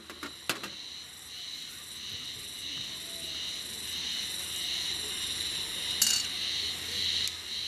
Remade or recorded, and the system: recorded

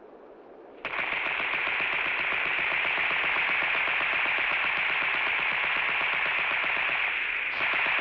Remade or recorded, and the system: recorded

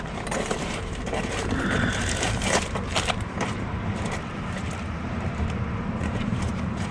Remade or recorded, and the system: remade, vocoder, BigVGAN v2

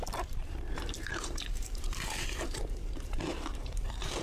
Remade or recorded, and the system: remade, vocoder, BigVGAN v2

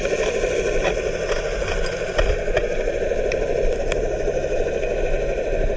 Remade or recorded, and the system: recorded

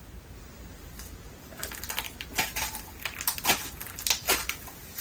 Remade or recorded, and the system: recorded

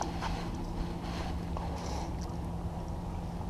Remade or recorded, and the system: recorded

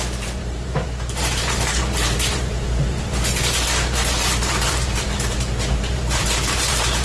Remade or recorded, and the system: remade, vocoder, BigVGAN v2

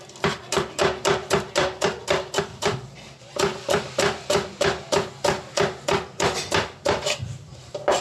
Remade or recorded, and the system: remade, vocoder, BigVGAN v2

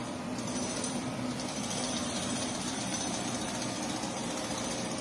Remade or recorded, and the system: remade, vocoder, BigVGAN v2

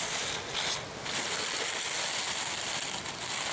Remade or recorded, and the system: recorded